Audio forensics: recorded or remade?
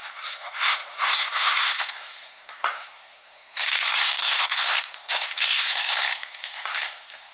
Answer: remade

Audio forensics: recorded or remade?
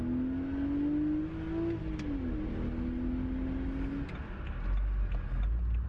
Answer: recorded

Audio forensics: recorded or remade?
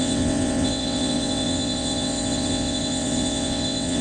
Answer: remade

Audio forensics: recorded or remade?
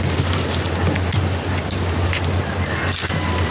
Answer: recorded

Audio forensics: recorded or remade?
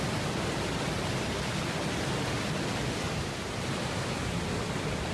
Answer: recorded